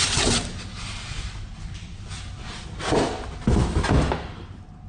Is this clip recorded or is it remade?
recorded